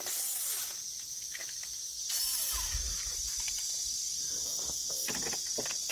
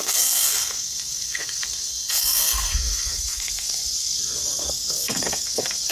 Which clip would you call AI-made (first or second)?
second